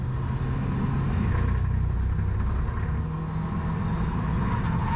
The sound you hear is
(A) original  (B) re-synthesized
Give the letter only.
A